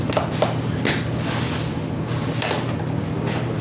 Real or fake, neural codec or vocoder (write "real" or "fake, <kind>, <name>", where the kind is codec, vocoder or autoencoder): real